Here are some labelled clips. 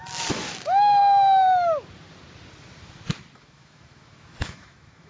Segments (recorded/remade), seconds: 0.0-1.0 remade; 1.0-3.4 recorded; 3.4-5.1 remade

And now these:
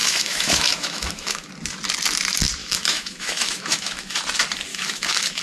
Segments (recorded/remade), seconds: 0.0-1.5 remade; 1.5-2.6 recorded; 2.6-4.2 remade; 4.2-4.7 recorded; 4.7-5.4 remade

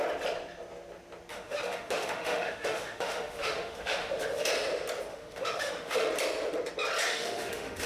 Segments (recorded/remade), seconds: 0.0-1.3 recorded; 1.3-4.5 remade; 4.5-5.1 recorded; 5.1-6.1 remade; 6.1-7.1 recorded; 7.1-7.9 remade

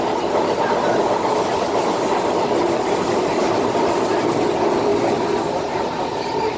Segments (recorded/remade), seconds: 0.0-6.6 recorded